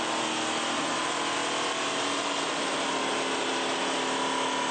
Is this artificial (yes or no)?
no